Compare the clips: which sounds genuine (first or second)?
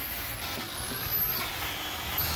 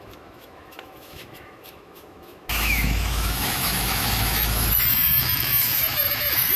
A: first